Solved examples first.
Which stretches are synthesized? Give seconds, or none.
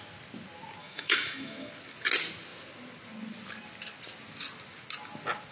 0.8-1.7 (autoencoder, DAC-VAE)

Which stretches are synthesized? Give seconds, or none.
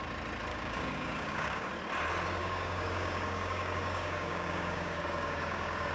0.5-1.7 (codec, DAC); 2.4-5.9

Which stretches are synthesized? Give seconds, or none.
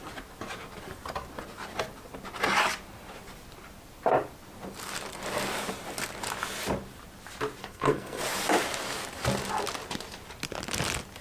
7.6-8.2 (codec, SNAC)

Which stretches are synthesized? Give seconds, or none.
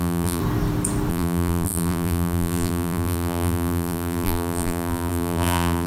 0.0-0.4 (vocoder, BigVGAN v2); 1.1-5.9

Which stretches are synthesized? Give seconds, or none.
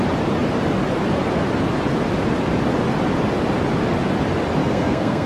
4.6-5.3 (codec, SNAC)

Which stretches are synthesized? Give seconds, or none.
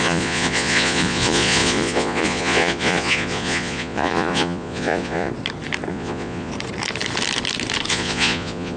0.0-5.3 (vocoder, Vocos); 5.9-6.5; 7.9-8.8